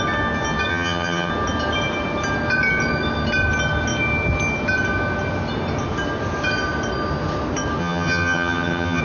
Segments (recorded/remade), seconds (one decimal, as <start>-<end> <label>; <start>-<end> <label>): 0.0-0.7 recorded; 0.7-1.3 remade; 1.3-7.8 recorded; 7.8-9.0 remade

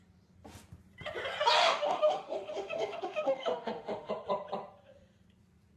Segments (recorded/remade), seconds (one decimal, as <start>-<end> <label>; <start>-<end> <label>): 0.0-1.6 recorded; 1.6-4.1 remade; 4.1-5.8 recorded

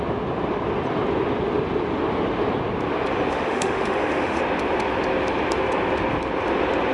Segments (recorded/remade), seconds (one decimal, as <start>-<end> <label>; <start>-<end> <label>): 0.0-3.3 recorded; 3.3-4.4 remade; 4.4-6.9 recorded

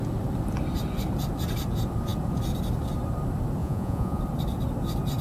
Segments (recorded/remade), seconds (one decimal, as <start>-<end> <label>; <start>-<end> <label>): 0.0-3.6 recorded; 3.6-4.2 remade; 4.2-5.2 recorded

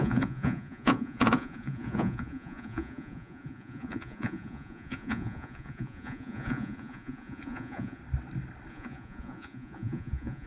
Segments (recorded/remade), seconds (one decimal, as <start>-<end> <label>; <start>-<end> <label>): 0.0-8.0 remade; 8.0-8.7 recorded; 8.7-10.5 remade